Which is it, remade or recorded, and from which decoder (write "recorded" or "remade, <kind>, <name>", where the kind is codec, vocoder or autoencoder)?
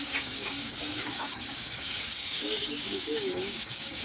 remade, codec, DAC